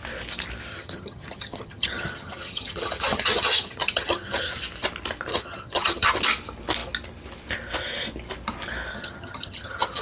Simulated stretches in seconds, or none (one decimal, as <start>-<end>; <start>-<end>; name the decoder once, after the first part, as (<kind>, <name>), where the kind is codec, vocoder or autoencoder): 0.7-4.5 (vocoder, HiFi-GAN); 5.3-6.1; 8.9-10.0